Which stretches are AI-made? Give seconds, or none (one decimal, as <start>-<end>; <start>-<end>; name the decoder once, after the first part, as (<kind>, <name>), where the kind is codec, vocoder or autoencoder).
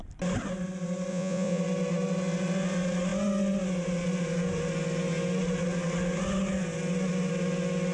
1.1-1.6 (vocoder, Vocos)